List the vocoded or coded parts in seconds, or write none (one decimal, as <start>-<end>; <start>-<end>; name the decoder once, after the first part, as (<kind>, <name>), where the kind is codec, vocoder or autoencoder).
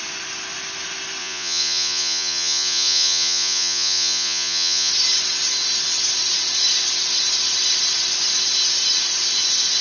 1.2-4.9 (vocoder, Vocos)